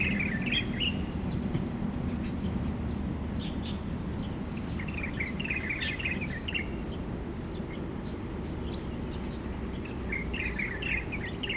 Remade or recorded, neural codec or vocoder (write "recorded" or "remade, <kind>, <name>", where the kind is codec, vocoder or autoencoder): recorded